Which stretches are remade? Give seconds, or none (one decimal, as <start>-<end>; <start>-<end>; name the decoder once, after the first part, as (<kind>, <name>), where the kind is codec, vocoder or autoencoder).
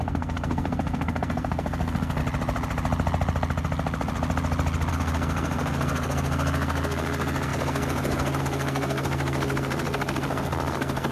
0.0-2.2 (codec, SNAC); 4.9-11.1